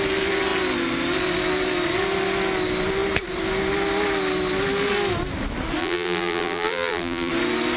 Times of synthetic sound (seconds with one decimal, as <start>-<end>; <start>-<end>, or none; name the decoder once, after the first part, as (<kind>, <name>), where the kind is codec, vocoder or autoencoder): 5.8-7.3 (vocoder, BigVGAN v2)

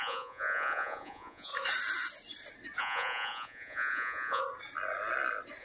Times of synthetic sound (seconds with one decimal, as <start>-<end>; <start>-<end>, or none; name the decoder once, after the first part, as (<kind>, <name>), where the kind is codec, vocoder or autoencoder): 0.0-1.5 (vocoder, Vocos); 2.8-4.4

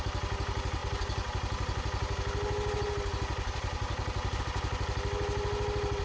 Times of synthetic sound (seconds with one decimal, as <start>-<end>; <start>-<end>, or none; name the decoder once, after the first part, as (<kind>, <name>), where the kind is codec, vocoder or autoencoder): none

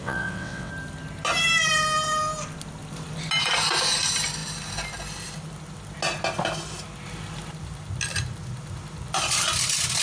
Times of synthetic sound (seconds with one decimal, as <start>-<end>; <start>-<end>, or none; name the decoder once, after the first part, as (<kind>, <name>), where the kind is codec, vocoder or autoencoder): 0.0-0.7 (vocoder, WaveNeXt)

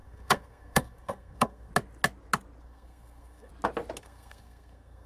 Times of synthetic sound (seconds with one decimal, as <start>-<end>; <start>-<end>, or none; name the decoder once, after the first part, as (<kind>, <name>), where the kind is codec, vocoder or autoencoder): 0.0-1.7 (codec, SNAC); 2.6-3.5; 4.0-5.1

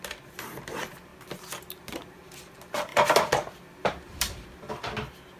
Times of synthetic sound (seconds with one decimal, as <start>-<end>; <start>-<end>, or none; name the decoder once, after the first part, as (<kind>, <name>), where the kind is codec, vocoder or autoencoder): 2.9-4.7 (vocoder, BigVGAN v2)

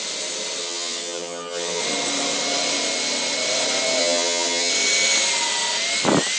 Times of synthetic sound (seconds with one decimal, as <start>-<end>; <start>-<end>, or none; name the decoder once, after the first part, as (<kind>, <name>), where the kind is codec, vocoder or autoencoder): 0.6-1.8 (vocoder, HiFi-GAN); 4.0-4.7

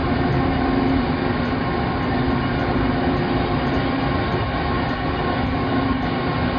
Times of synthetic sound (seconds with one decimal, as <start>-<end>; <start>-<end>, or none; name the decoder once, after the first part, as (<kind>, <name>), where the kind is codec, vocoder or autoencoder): none